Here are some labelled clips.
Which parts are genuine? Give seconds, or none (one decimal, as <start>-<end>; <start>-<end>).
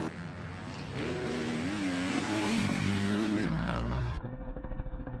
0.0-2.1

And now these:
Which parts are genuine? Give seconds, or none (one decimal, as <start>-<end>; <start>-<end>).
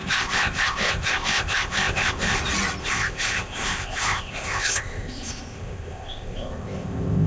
2.4-2.8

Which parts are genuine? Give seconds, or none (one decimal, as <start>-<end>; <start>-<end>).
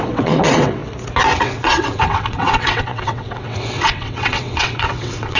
0.8-1.3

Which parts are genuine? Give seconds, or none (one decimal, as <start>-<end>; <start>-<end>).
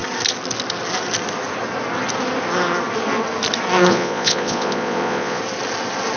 0.0-3.9; 5.4-6.2